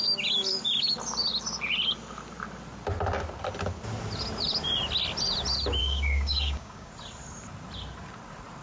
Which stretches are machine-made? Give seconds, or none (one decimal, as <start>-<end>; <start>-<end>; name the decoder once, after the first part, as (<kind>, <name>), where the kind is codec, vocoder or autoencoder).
5.8-6.9 (codec, DAC)